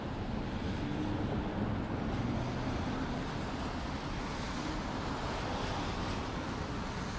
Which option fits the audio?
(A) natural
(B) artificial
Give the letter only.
A